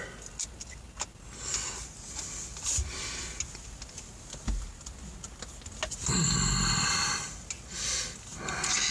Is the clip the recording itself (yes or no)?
yes